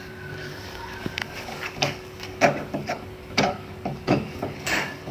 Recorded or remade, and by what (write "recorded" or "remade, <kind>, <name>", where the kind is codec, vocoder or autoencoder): remade, codec, DAC